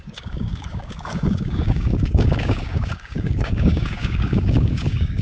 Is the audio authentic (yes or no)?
no